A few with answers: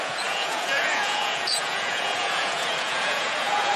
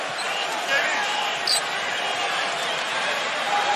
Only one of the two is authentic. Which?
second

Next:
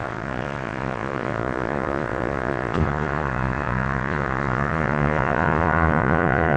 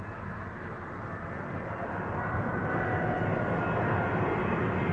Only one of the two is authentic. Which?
second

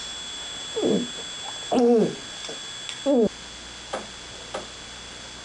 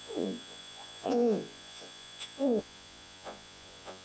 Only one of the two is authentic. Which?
first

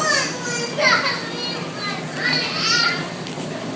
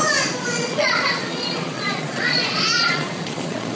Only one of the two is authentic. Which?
first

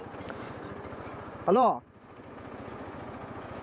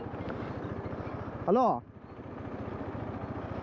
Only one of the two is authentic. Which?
second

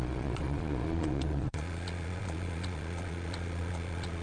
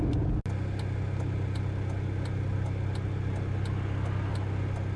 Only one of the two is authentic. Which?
second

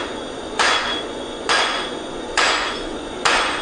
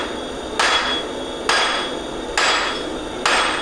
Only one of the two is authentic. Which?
second